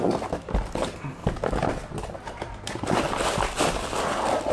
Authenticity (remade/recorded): recorded